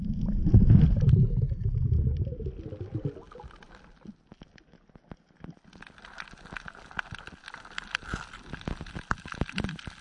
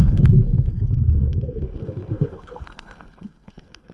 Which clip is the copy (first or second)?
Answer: second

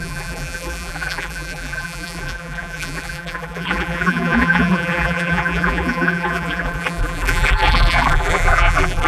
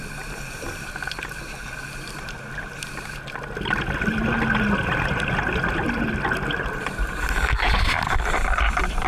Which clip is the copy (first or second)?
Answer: first